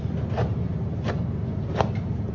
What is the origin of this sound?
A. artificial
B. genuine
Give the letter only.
B